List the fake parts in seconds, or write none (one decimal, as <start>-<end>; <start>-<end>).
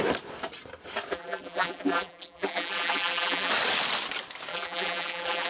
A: 1.1-3.5; 4.5-5.5